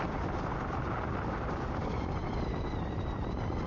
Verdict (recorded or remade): recorded